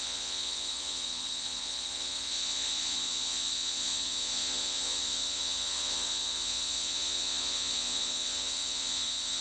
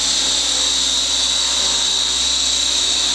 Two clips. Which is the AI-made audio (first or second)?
first